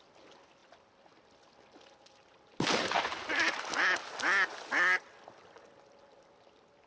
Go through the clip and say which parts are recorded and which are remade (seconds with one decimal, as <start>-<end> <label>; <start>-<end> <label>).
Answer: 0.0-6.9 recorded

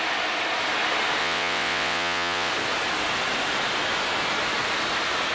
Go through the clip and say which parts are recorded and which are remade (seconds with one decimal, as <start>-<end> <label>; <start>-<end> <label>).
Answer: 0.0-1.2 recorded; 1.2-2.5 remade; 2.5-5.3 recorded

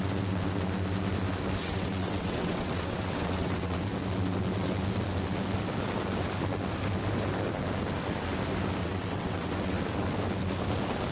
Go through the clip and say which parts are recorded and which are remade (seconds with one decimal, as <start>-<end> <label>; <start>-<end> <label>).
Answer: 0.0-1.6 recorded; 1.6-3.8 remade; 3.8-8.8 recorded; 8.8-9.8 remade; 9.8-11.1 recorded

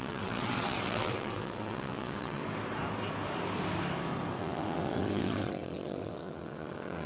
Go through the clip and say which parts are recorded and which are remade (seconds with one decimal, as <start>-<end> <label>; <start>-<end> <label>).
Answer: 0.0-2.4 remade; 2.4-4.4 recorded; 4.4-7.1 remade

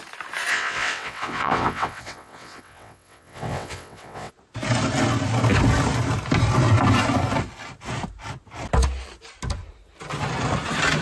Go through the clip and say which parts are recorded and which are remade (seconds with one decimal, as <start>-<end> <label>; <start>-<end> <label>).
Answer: 0.0-0.5 recorded; 0.5-4.3 remade; 4.3-11.0 recorded

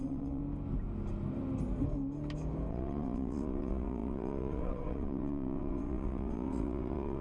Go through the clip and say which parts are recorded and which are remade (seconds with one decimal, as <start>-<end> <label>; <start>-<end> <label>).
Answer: 0.0-0.4 remade; 0.4-2.7 recorded; 2.7-7.2 remade

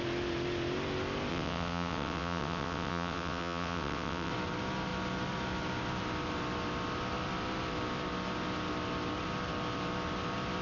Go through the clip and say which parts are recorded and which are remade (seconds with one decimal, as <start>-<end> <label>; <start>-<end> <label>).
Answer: 0.0-1.3 recorded; 1.3-4.3 remade; 4.3-10.6 recorded